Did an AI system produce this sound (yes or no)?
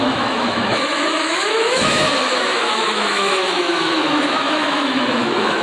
yes